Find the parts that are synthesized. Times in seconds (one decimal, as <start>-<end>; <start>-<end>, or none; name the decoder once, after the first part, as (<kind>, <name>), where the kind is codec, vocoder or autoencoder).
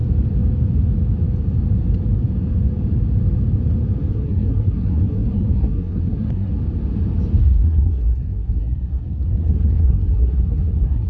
4.1-6.5 (codec, SNAC); 7.4-11.1